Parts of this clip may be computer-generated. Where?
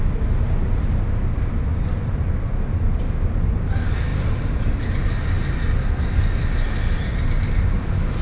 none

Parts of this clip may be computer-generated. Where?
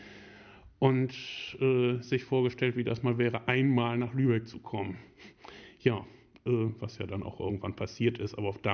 5.0-7.5 (vocoder, BigVGAN v2)